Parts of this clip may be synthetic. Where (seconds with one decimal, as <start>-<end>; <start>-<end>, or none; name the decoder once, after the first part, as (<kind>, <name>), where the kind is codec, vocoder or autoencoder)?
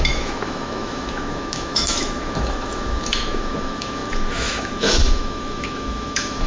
0.0-6.5 (autoencoder, DAC-VAE)